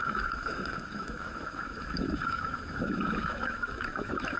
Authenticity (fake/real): fake